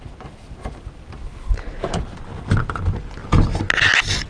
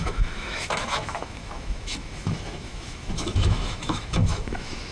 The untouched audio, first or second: first